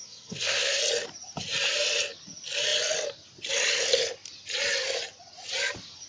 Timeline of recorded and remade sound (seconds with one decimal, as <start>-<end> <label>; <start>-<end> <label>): 0.0-0.8 remade; 0.8-6.1 recorded